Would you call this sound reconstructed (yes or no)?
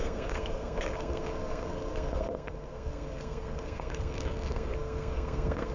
yes